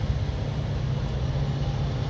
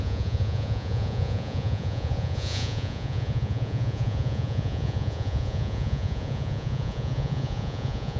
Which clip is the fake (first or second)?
second